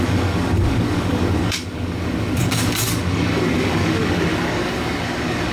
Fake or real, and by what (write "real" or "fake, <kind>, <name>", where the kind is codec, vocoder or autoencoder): fake, codec, DAC